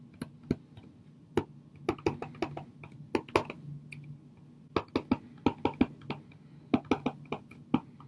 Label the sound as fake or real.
real